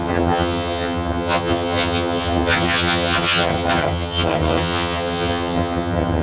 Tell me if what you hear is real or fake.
fake